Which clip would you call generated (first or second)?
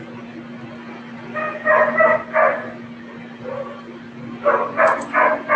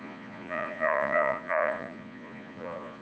second